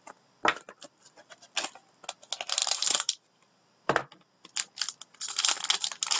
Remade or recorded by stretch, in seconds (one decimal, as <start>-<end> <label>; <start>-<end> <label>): 0.0-2.6 recorded; 2.6-3.8 remade; 3.8-6.2 recorded